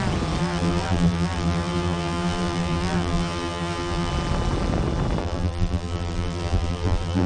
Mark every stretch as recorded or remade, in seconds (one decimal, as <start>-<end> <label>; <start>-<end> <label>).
0.0-0.4 recorded; 0.4-4.1 remade; 4.1-5.2 recorded; 5.2-7.3 remade